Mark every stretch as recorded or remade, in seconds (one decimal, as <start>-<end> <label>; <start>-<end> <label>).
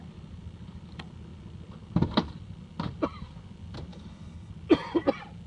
0.0-3.9 recorded; 3.9-4.5 remade; 4.5-5.5 recorded